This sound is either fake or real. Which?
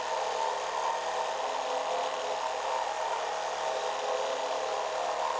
real